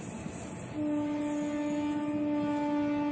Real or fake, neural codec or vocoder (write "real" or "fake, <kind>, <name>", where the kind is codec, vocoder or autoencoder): real